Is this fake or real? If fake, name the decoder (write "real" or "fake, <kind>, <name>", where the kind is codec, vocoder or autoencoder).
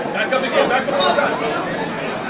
fake, vocoder, Vocos